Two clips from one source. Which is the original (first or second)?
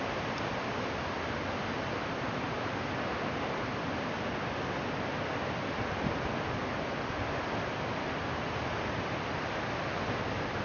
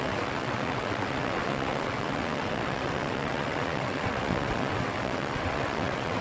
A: first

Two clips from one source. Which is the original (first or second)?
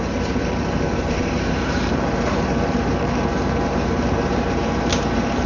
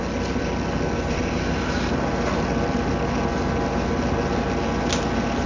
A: second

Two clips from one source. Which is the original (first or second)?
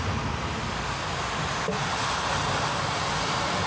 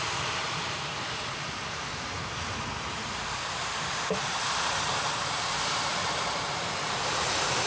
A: first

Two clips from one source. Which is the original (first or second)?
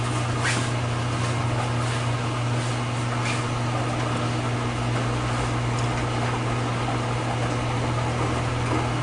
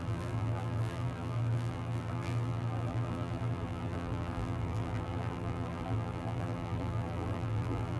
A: first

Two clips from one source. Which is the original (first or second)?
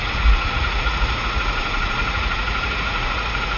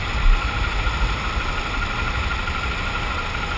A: second